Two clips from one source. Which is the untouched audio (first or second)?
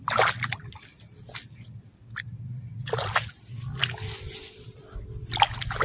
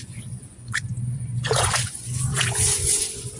first